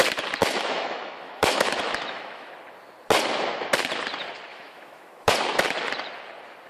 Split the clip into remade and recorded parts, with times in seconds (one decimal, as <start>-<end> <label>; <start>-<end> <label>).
0.0-0.4 recorded; 0.4-2.5 remade; 2.5-4.5 recorded; 4.5-5.3 remade; 5.3-6.7 recorded